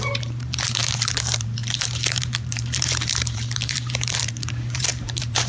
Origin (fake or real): fake